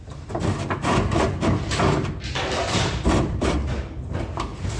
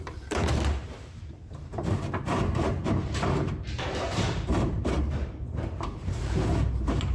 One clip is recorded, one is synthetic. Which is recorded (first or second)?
first